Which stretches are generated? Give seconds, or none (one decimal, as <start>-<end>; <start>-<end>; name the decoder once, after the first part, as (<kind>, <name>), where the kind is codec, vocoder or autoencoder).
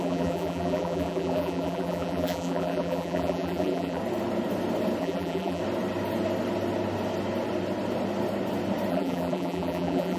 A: 0.0-4.0 (vocoder, BigVGAN v2); 5.0-5.6; 8.9-10.2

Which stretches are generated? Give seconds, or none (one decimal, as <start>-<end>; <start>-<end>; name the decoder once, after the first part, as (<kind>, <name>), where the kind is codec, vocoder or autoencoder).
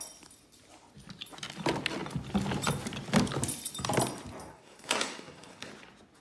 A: 4.5-5.7 (codec, SNAC)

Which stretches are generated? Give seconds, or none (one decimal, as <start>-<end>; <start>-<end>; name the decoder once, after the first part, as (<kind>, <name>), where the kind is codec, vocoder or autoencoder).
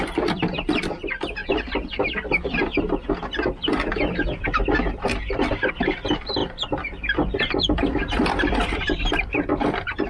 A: 0.0-1.4 (vocoder, BigVGAN v2); 5.7-10.1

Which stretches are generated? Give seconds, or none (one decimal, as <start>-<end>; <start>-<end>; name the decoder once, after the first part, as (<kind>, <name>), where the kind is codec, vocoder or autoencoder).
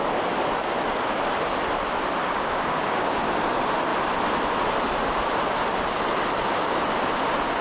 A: 2.2-3.2 (codec, DAC)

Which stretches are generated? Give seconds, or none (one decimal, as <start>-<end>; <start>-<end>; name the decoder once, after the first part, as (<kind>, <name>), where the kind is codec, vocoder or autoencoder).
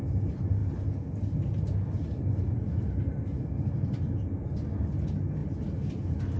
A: none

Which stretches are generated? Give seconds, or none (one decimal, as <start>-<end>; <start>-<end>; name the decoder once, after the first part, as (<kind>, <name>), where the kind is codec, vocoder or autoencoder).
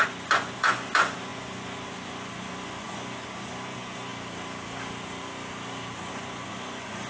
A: 0.0-4.1 (vocoder, Vocos); 6.1-7.1